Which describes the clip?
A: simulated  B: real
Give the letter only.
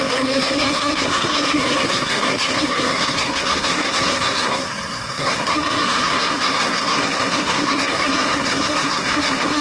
A